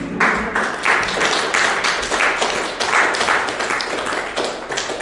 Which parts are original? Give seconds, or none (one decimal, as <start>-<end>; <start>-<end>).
0.0-5.0